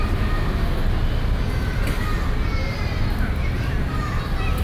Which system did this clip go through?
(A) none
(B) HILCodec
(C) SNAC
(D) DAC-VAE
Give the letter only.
A